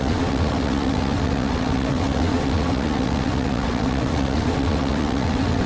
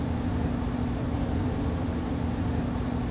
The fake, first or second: first